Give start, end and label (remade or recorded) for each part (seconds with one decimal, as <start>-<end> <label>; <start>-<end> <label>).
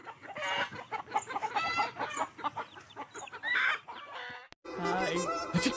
0.0-3.5 recorded; 3.5-4.4 remade; 4.4-5.8 recorded